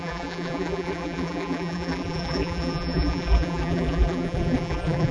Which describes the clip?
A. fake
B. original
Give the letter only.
A